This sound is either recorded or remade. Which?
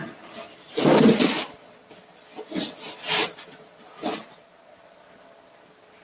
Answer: recorded